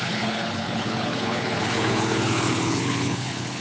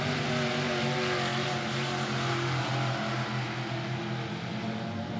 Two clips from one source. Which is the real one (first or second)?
second